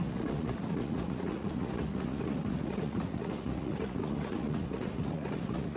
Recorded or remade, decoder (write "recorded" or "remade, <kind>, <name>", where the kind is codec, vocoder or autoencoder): remade, vocoder, Vocos